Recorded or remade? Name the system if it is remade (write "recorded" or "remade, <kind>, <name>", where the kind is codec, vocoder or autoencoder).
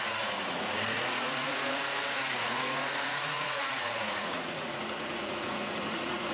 remade, vocoder, Vocos